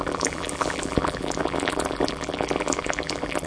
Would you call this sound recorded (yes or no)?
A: no